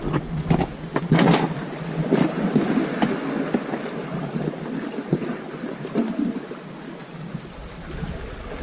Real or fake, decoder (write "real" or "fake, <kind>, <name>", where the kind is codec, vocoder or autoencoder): real